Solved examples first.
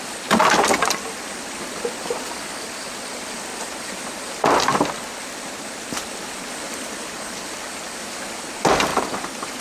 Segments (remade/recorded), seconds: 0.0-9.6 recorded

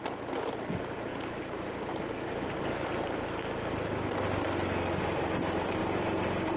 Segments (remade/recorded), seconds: 0.0-1.1 recorded; 1.1-2.0 remade; 2.0-5.8 recorded; 5.8-6.6 remade